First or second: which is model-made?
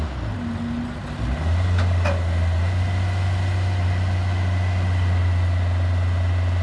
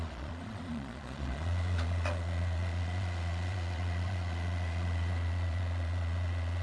second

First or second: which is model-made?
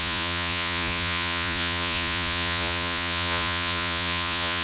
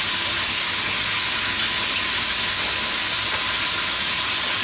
first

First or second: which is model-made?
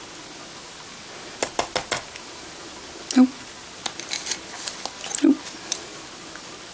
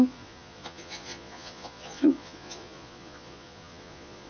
second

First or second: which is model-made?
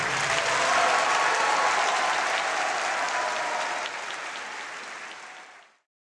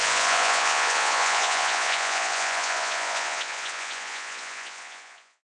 second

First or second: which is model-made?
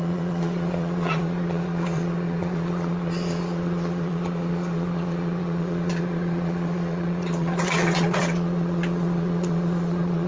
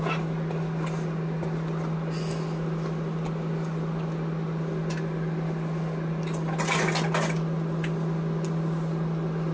first